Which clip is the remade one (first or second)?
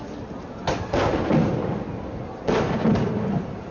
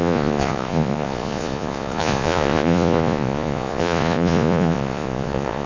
second